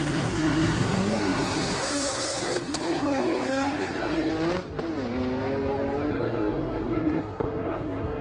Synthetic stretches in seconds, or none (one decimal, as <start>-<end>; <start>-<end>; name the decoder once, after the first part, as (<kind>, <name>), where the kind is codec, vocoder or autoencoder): 0.0-4.3 (codec, SNAC); 6.1-8.2

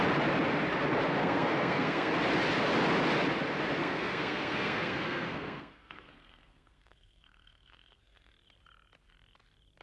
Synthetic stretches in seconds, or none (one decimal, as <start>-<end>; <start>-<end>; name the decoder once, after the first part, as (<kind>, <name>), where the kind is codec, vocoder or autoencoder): 1.2-2.1 (codec, SNAC); 3.8-8.3

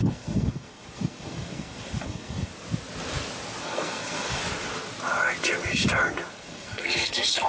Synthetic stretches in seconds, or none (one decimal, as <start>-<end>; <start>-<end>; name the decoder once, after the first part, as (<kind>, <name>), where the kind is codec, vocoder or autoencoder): 0.0-2.5 (codec, SNAC); 3.6-4.4; 6.3-7.5